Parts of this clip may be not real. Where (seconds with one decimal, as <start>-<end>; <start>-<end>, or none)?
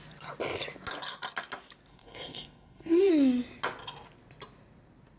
1.9-3.1